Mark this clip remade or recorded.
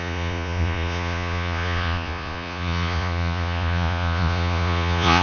remade